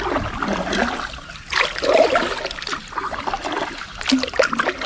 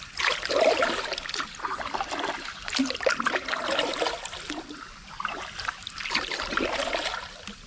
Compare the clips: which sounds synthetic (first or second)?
second